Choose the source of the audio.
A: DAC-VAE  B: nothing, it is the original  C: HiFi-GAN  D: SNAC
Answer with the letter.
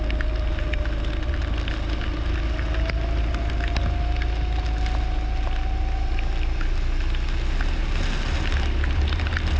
B